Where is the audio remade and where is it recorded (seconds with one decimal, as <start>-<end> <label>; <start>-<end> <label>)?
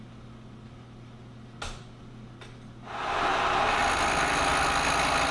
0.0-3.3 recorded; 3.3-3.8 remade; 3.8-5.3 recorded